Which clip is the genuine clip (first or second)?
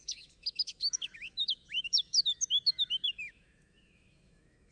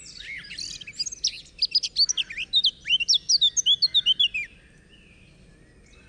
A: second